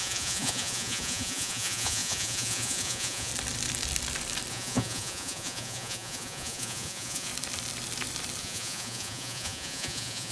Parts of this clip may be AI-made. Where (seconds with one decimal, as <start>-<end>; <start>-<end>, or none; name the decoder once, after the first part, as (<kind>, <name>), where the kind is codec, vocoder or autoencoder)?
0.0-3.3 (vocoder, Vocos); 4.5-7.3; 8.4-10.3